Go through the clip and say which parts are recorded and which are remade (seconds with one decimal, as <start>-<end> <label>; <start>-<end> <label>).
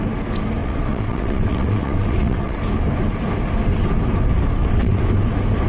0.0-0.6 recorded; 0.6-2.6 remade; 2.6-4.6 recorded; 4.6-5.1 remade; 5.1-5.7 recorded